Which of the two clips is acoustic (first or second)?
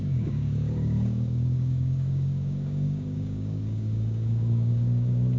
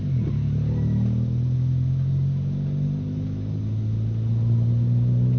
second